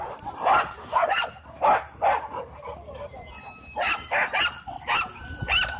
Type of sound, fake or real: real